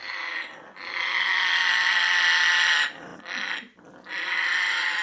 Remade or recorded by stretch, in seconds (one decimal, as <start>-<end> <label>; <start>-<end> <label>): 0.0-1.5 remade; 1.5-2.5 recorded; 2.5-5.0 remade